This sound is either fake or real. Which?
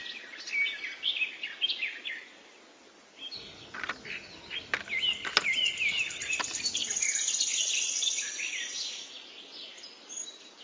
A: real